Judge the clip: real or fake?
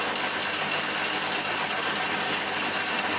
real